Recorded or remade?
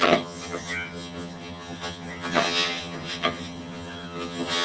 remade